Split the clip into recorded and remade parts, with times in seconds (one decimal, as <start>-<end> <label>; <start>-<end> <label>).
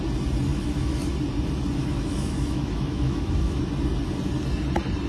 0.0-0.5 recorded; 0.5-1.1 remade; 1.1-1.8 recorded; 1.8-3.6 remade; 3.6-5.1 recorded